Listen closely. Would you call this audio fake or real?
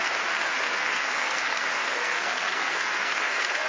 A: fake